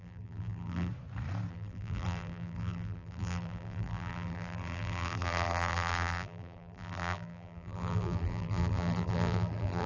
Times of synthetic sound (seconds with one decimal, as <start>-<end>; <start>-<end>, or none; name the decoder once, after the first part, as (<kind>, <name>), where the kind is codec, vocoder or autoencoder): 0.0-0.9 (vocoder, BigVGAN v2); 1.5-9.9